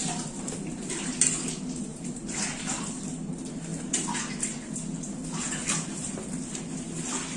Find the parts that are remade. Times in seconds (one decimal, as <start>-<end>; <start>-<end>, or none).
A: 1.9-2.4